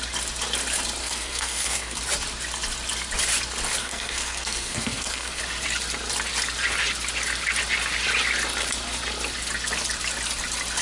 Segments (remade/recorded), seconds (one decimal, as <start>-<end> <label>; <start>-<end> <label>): 0.0-1.0 recorded; 1.0-2.0 remade; 2.0-3.8 recorded; 3.8-5.4 remade; 5.4-10.8 recorded